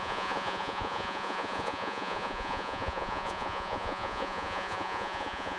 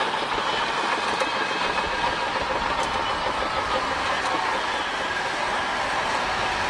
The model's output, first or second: first